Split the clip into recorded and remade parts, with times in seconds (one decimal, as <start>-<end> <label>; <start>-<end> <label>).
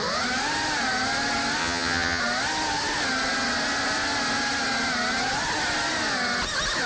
0.0-1.6 recorded; 1.6-2.2 remade; 2.2-6.9 recorded